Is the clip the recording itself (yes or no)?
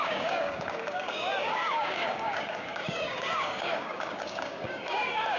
no